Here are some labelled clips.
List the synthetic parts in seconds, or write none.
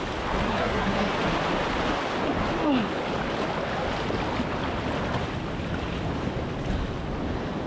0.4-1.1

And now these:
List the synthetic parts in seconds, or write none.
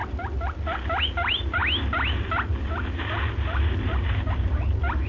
none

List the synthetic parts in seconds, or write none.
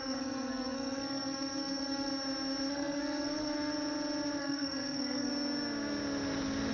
0.0-2.1; 2.7-3.7; 4.4-5.3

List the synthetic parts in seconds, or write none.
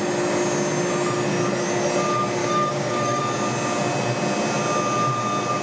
2.4-3.2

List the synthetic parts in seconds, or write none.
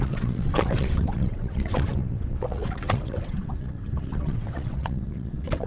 0.0-5.7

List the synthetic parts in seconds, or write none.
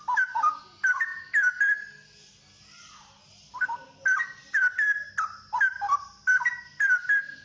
none